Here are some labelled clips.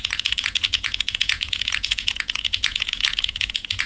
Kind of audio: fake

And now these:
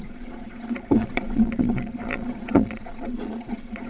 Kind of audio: fake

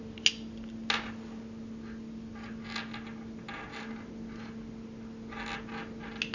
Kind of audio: real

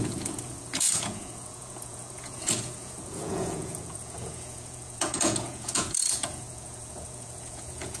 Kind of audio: fake